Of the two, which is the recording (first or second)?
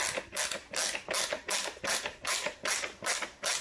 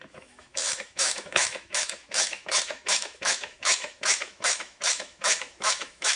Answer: first